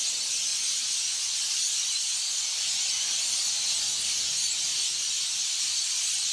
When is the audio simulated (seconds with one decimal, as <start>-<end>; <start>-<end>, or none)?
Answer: none